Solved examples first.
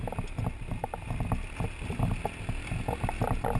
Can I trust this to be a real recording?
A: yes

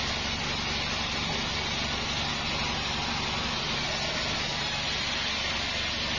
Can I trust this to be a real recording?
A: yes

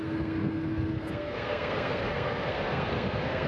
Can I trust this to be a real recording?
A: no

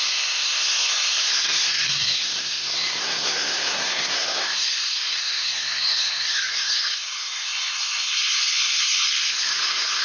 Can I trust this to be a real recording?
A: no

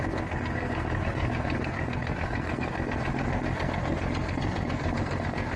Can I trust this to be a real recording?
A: no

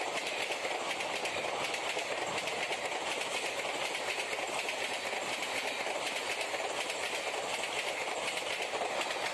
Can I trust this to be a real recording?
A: yes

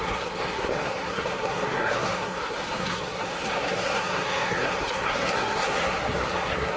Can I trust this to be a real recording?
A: no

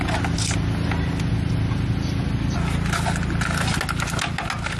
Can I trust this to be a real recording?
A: yes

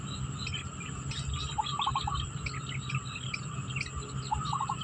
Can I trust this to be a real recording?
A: yes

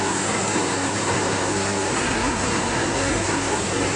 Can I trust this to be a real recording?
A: no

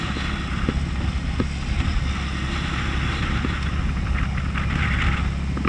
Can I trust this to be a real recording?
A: yes